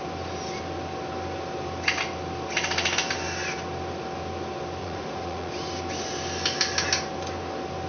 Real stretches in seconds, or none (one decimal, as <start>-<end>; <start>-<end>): 0.0-4.8; 5.5-7.9